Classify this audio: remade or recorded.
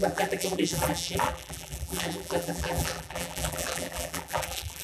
remade